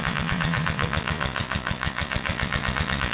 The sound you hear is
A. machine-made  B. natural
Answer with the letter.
A